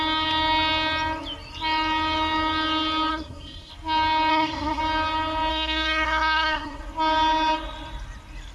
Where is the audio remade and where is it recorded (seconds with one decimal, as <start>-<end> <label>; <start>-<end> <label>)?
0.0-3.1 recorded; 3.1-3.7 remade; 3.7-4.3 recorded; 4.3-4.8 remade; 4.8-5.5 recorded; 5.5-6.8 remade; 6.8-8.5 recorded

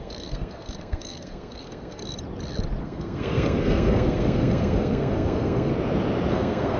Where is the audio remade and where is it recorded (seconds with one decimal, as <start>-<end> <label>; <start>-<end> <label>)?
0.0-2.0 remade; 2.0-2.8 recorded; 2.8-5.7 remade; 5.7-6.3 recorded; 6.3-6.8 remade

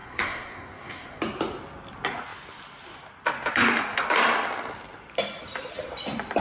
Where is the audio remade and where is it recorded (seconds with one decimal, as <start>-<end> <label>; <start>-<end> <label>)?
0.0-1.2 remade; 1.2-6.4 recorded

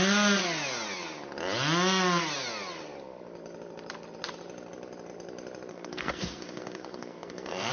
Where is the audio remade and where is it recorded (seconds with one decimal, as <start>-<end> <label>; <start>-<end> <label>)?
0.0-5.7 recorded; 5.7-7.7 remade

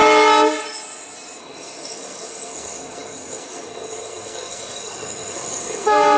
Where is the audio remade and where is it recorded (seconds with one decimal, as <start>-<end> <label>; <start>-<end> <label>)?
0.0-1.4 recorded; 1.4-6.2 remade

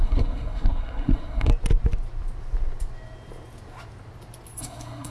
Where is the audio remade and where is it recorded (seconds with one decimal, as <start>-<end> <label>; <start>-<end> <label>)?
0.0-1.5 remade; 1.5-4.6 recorded; 4.6-5.1 remade